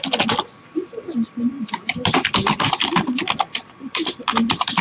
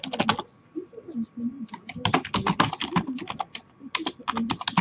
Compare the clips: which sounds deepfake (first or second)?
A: first